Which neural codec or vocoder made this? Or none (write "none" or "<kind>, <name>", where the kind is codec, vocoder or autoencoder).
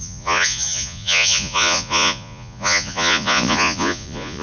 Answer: vocoder, Vocos